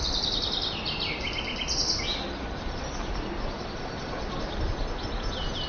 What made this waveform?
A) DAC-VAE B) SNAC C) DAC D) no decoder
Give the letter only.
D